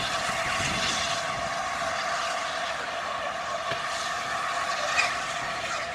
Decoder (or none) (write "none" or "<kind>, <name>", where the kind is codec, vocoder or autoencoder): none